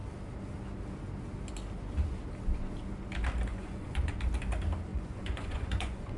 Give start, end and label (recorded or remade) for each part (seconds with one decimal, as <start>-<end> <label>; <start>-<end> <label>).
0.0-3.5 recorded; 3.5-4.1 remade; 4.1-4.9 recorded; 4.9-6.2 remade